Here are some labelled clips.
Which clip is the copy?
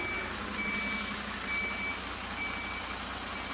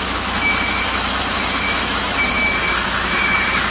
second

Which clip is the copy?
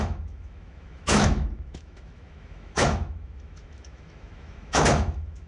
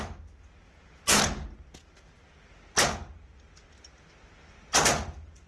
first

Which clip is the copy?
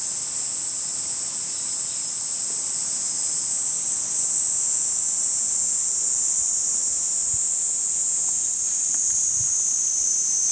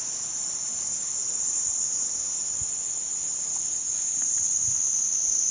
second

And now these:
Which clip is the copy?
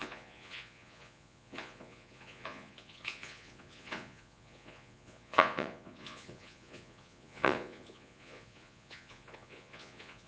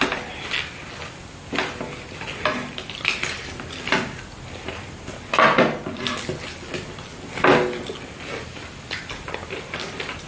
first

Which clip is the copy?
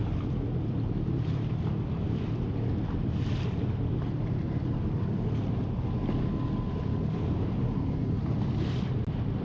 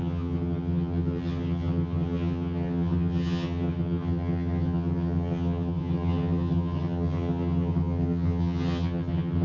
second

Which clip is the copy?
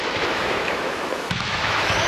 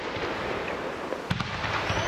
first